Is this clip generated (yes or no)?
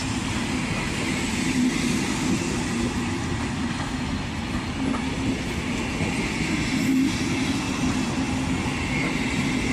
no